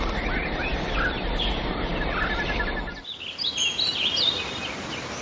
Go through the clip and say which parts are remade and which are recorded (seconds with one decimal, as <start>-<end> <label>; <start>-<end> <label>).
0.0-0.7 recorded; 0.7-1.3 remade; 1.3-1.9 recorded; 1.9-2.6 remade; 2.6-5.2 recorded

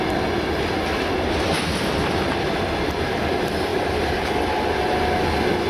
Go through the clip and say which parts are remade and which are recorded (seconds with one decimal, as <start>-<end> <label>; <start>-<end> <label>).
0.0-5.7 recorded

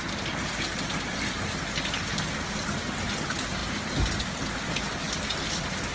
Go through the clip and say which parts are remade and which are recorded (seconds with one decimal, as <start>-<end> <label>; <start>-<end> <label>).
0.0-5.9 recorded

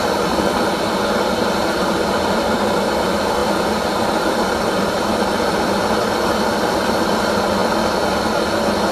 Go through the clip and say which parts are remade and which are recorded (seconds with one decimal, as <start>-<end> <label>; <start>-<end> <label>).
0.0-7.6 remade; 7.6-8.9 recorded

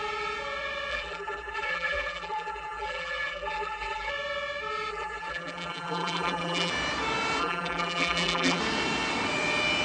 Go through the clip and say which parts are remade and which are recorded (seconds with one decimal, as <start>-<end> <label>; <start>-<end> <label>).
0.0-0.9 recorded; 0.9-4.1 remade; 4.1-4.9 recorded; 4.9-6.7 remade; 6.7-7.4 recorded; 7.4-8.6 remade; 8.6-9.8 recorded